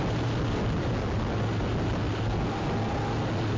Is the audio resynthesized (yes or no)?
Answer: no